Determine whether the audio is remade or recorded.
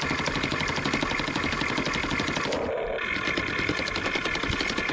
recorded